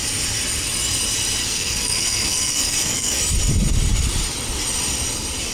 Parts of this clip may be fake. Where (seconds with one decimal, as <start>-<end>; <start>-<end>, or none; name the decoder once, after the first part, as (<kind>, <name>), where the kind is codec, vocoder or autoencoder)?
1.4-3.2 (codec, SNAC)